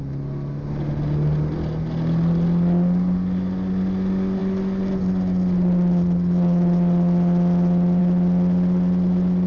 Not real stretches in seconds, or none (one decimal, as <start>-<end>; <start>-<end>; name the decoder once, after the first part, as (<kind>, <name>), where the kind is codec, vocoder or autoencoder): none

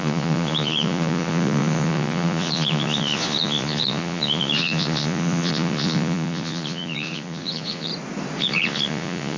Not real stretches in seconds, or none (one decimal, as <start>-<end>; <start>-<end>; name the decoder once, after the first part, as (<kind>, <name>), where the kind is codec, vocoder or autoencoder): 0.0-7.9 (vocoder, Vocos); 8.4-9.4

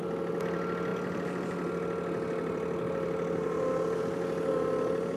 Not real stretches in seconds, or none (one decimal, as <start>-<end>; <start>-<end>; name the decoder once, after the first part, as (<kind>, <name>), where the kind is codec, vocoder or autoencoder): none

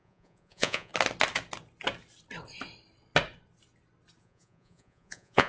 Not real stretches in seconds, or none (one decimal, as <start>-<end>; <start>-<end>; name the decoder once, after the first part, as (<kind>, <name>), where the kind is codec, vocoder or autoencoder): 0.0-0.9 (vocoder, Vocos); 4.2-5.5

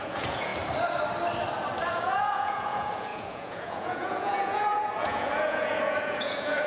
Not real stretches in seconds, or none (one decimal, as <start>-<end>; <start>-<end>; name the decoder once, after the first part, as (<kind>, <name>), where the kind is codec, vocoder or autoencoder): 0.0-0.5 (vocoder, Vocos); 1.9-6.7

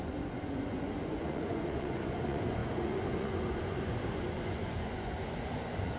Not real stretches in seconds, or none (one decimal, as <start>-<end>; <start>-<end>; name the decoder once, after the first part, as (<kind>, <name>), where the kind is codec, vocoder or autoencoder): 0.0-6.0 (vocoder, Vocos)

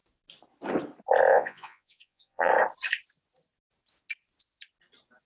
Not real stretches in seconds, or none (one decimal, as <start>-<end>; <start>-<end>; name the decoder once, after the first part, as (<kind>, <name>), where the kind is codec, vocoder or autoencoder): 1.3-2.5 (vocoder, Vocos)

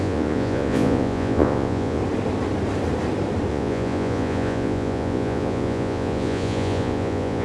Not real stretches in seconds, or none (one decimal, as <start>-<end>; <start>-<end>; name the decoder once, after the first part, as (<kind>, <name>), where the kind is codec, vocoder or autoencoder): 0.0-2.0 (vocoder, Vocos); 3.5-7.4